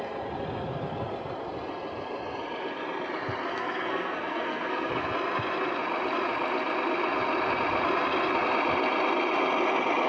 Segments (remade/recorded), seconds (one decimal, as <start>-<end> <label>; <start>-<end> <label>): 0.0-3.5 recorded; 3.5-4.9 remade; 4.9-10.1 recorded